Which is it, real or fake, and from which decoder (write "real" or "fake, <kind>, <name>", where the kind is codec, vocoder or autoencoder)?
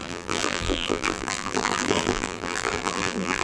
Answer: fake, vocoder, BigVGAN v2